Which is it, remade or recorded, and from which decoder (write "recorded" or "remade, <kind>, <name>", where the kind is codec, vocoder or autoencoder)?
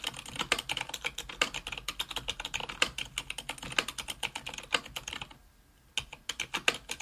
recorded